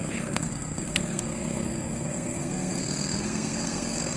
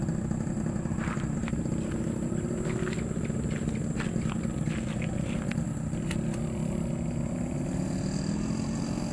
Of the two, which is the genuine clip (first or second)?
second